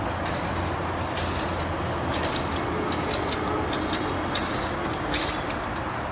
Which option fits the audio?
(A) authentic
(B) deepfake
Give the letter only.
A